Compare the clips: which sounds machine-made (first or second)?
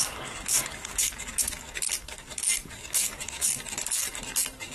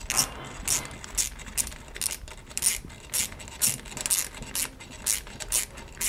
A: first